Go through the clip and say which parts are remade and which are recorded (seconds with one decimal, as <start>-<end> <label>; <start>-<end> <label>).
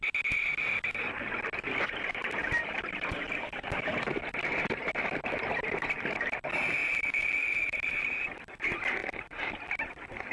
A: 0.0-2.2 recorded; 2.2-3.0 remade; 3.0-6.8 recorded; 6.8-8.4 remade; 8.4-9.0 recorded; 9.0-9.5 remade; 9.5-10.3 recorded